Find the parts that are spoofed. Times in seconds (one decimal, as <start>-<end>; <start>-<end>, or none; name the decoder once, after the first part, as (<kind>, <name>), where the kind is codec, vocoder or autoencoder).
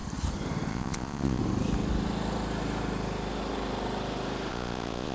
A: 0.7-1.4 (vocoder, Vocos); 4.5-5.1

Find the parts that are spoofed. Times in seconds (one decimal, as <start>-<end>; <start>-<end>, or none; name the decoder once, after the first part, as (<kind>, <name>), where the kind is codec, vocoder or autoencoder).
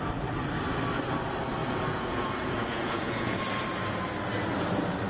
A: 1.6-3.4 (vocoder, Vocos)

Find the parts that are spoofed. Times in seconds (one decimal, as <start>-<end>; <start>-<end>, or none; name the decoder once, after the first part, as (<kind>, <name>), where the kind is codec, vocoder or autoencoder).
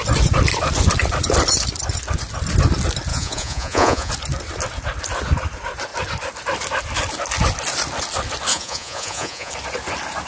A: 3.1-4.1 (vocoder, Vocos); 8.5-9.5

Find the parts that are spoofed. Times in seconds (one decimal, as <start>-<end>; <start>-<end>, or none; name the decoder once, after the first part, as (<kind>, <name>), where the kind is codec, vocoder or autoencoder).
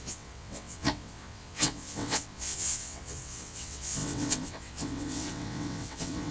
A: 0.0-6.3 (vocoder, WaveNeXt)